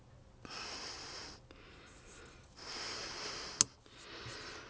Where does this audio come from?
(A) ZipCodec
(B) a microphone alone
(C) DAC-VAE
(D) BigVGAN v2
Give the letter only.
B